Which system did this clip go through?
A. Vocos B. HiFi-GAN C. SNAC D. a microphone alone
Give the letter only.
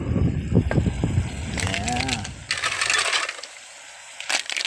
D